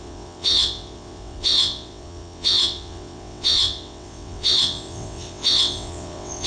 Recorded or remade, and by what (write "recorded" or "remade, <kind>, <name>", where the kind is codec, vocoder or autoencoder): remade, vocoder, WaveNeXt